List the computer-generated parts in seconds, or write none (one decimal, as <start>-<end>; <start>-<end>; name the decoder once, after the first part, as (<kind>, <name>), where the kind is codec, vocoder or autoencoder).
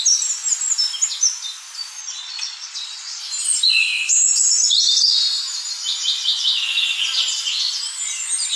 2.0-3.2 (vocoder, Vocos)